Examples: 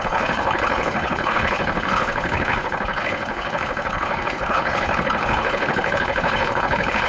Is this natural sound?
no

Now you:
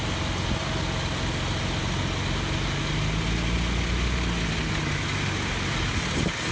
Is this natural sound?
yes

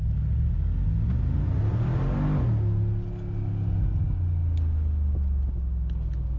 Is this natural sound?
yes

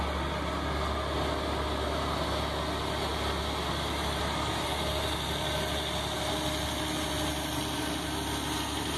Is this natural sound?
yes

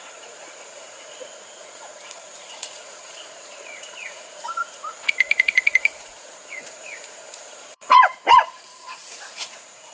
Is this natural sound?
no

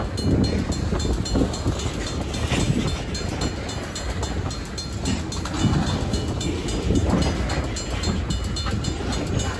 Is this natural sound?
yes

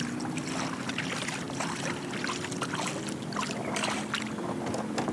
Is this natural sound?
yes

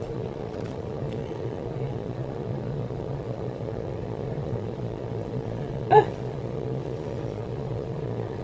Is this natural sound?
no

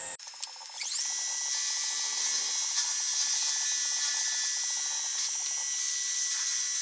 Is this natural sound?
yes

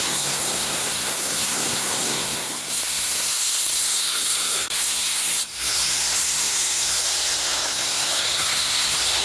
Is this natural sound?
no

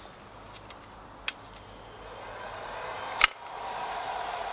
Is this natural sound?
yes